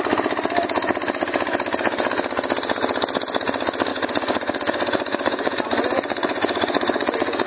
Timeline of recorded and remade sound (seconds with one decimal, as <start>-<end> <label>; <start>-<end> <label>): 0.0-3.9 recorded; 3.9-7.5 remade